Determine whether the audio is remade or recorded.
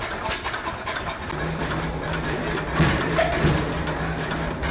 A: recorded